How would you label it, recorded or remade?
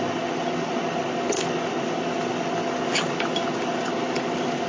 recorded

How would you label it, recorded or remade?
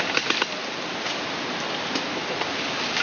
recorded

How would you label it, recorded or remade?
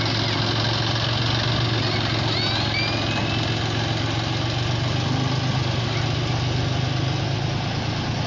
recorded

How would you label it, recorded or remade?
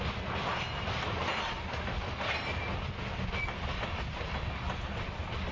recorded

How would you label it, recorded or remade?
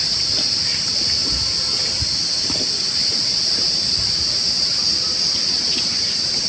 recorded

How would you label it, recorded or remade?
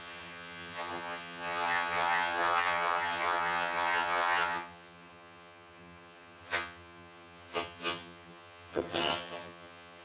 remade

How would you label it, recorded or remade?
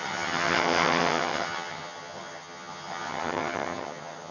remade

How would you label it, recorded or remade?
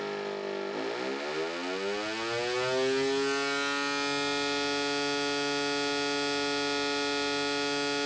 recorded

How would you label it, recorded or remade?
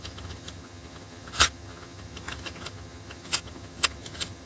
remade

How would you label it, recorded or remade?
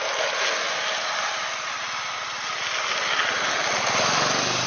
recorded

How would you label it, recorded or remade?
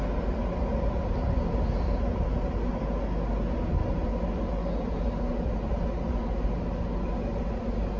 recorded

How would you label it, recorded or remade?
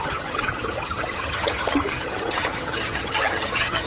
remade